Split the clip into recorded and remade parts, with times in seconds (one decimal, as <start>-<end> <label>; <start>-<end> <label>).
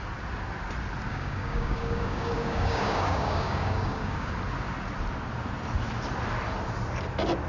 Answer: 0.0-1.1 recorded; 1.1-4.3 remade; 4.3-7.5 recorded